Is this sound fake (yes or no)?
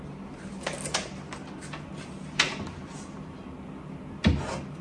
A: no